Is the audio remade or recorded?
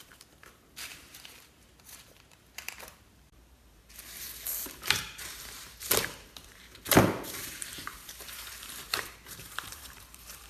remade